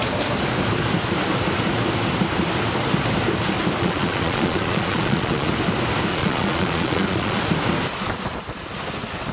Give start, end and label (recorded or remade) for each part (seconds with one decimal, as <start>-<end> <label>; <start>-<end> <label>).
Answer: 0.0-3.8 recorded; 3.8-5.5 remade; 5.5-6.1 recorded; 6.1-7.4 remade; 7.4-9.3 recorded